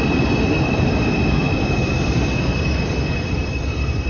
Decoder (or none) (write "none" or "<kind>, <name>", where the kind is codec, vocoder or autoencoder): none